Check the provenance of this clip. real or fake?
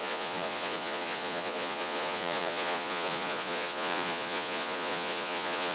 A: fake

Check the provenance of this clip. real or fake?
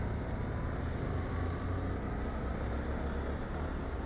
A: real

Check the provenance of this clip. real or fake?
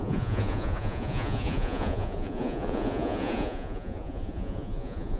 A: fake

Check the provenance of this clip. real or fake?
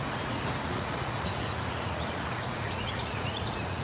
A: fake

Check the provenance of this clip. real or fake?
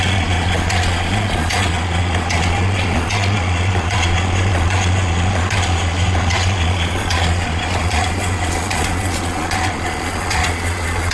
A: fake